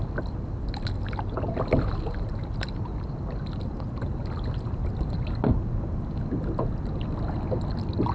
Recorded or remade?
recorded